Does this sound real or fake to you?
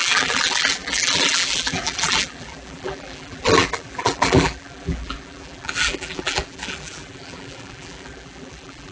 fake